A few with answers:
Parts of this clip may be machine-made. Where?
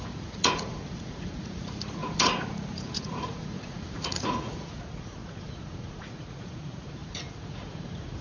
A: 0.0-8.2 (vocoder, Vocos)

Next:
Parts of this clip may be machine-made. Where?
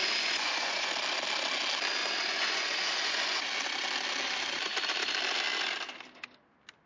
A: 0.0-0.9 (vocoder, Vocos); 2.0-3.4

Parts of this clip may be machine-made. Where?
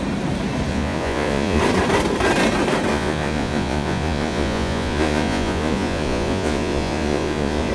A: 0.7-1.6 (vocoder, Vocos); 2.9-7.7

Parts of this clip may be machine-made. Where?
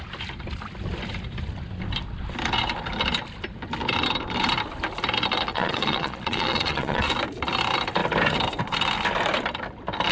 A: 5.5-7.1 (vocoder, Vocos)